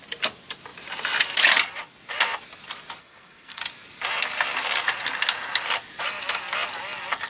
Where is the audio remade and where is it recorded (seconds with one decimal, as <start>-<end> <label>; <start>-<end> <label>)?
0.0-3.0 recorded; 3.0-3.6 remade; 3.6-7.3 recorded